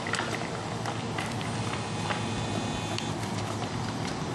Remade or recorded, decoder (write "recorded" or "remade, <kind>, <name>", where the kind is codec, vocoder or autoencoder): recorded